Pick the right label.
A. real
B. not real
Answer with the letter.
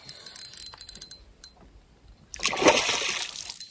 A